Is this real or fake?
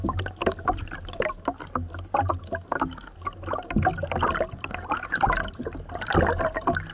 real